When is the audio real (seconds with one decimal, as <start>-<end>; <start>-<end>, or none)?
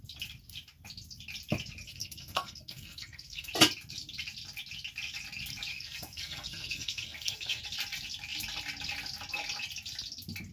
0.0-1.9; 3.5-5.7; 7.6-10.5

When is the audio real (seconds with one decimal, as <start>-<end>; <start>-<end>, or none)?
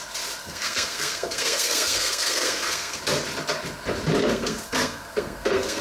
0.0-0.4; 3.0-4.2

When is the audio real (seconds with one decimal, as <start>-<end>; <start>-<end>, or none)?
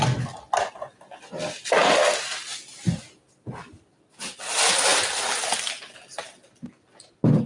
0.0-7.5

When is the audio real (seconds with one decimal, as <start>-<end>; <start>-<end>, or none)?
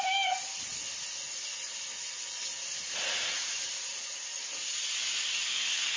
0.0-5.5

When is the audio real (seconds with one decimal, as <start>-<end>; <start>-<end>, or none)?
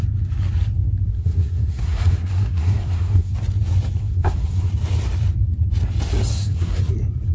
0.0-1.1; 3.3-4.0; 4.7-6.3; 6.8-7.3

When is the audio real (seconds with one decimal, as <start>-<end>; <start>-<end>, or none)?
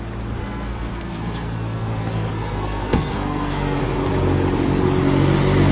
0.0-0.4; 3.8-5.7